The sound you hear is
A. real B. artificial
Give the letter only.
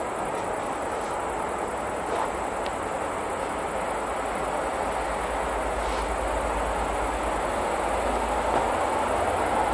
A